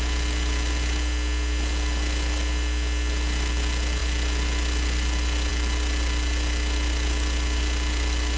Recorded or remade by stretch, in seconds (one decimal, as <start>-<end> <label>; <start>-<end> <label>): 0.0-8.4 recorded